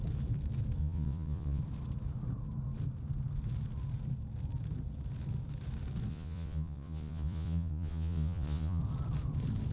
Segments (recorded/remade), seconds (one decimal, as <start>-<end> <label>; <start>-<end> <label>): 0.0-0.8 recorded; 0.8-1.6 remade; 1.6-6.1 recorded; 6.1-8.8 remade; 8.8-9.7 recorded

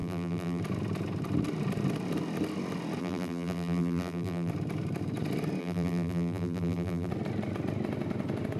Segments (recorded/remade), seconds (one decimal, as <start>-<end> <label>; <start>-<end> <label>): 0.0-0.6 remade; 0.6-3.0 recorded; 3.0-4.5 remade; 4.5-5.6 recorded; 5.6-7.1 remade; 7.1-8.6 recorded